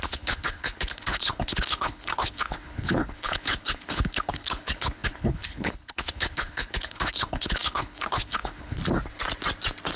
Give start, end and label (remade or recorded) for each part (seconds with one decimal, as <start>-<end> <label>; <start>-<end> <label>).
0.0-8.8 remade; 8.8-10.0 recorded